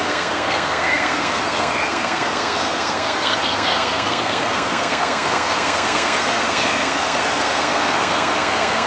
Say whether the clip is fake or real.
fake